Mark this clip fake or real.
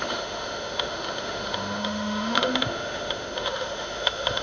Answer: fake